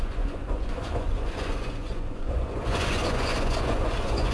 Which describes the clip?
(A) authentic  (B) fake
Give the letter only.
B